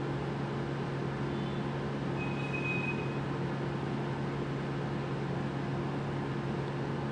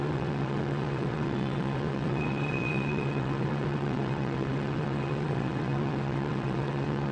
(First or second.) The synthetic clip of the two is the second